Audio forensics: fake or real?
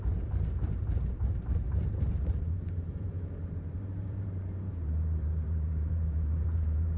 fake